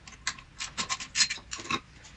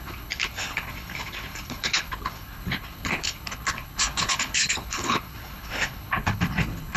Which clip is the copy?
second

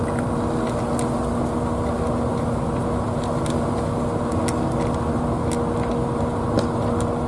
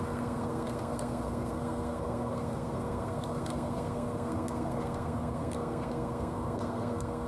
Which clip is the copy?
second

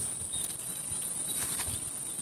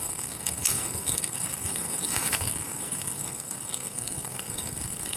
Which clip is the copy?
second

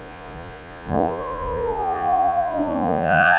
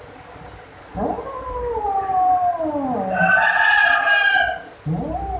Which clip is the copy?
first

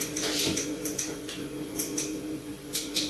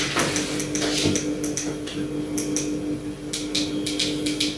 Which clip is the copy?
first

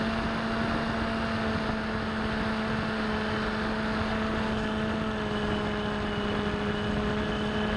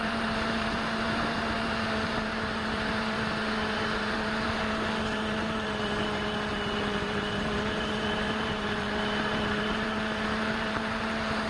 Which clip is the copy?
second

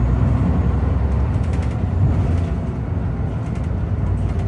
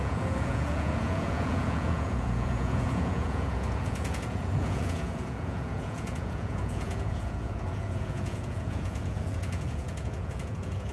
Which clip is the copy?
second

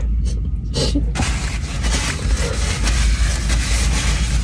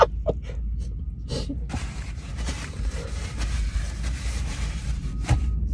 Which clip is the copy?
second